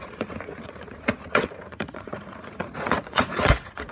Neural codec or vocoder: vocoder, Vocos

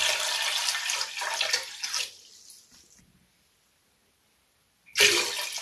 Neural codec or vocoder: none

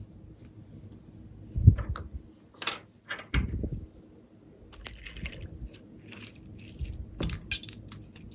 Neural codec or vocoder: none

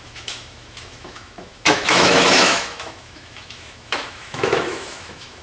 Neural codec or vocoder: autoencoder, DAC-VAE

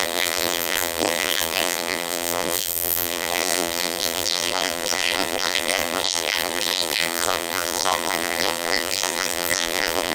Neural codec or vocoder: vocoder, BigVGAN v2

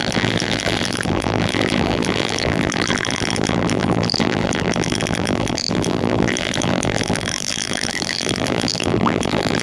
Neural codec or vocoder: vocoder, BigVGAN v2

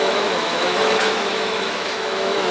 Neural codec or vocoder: autoencoder, DAC-VAE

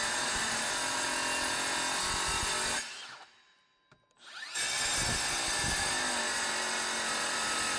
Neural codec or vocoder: none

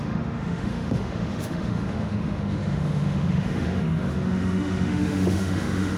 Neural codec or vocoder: autoencoder, DAC-VAE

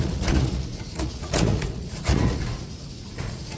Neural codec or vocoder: vocoder, Vocos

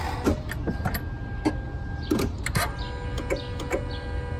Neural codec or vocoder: none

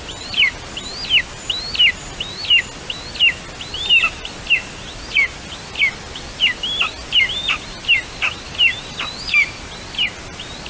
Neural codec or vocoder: none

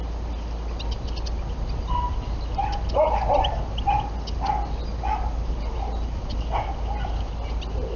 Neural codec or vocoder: none